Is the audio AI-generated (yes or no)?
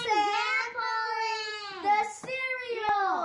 no